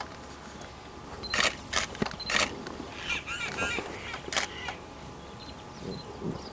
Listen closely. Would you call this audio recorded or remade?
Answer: recorded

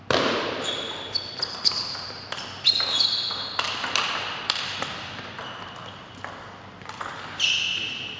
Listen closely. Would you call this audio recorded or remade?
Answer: recorded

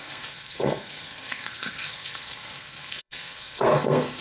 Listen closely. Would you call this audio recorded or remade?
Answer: remade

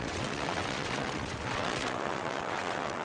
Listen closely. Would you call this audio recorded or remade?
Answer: remade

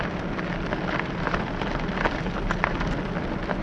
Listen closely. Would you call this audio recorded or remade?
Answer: recorded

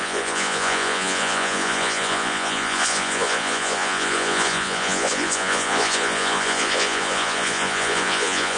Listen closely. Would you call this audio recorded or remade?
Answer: remade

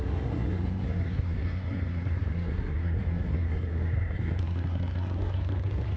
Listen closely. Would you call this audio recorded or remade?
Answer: remade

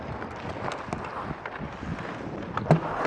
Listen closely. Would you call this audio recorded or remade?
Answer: recorded